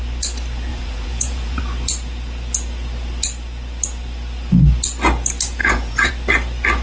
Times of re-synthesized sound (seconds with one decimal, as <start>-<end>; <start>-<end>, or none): 0.7-1.6; 5.6-6.1